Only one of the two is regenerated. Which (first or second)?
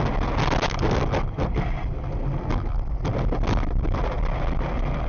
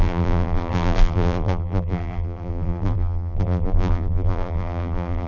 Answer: second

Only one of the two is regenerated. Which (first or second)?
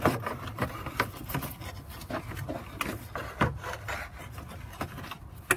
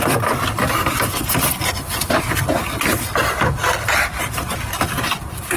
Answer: second